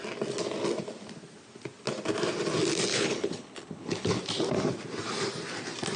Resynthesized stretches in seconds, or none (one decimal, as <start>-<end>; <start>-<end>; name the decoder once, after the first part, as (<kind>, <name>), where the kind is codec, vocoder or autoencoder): 2.9-4.2 (codec, HILCodec)